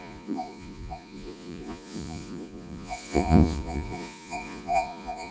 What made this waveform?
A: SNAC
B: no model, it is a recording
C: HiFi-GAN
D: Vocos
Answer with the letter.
D